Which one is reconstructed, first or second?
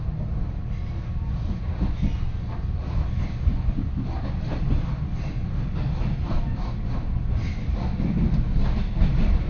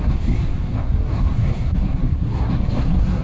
second